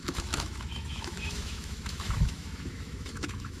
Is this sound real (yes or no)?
no